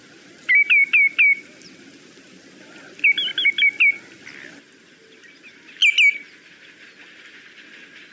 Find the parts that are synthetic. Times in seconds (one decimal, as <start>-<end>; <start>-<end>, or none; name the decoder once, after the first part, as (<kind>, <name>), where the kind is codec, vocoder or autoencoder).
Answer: none